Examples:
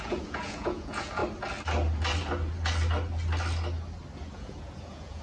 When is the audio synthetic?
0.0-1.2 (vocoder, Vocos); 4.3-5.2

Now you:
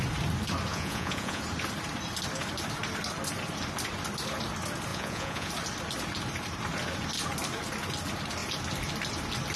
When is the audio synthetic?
0.7-1.4 (vocoder, Vocos); 4.9-5.5

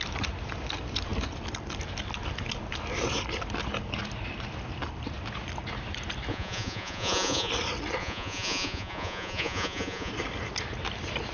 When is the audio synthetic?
6.3-7.5 (vocoder, Vocos); 8.0-10.1

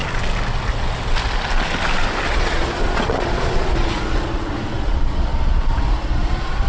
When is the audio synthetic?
2.3-6.7 (vocoder, Vocos)

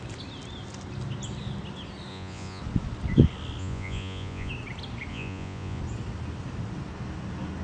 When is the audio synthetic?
2.1-2.6 (vocoder, Vocos); 3.6-4.5; 5.1-5.8

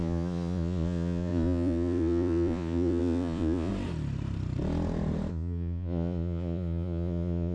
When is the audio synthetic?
0.0-3.7 (vocoder, Vocos); 5.3-7.5

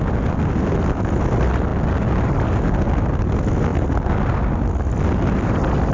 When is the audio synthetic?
none